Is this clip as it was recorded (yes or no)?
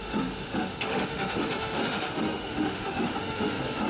no